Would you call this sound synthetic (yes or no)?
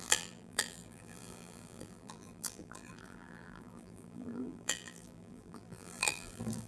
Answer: yes